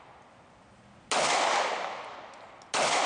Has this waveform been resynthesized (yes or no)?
no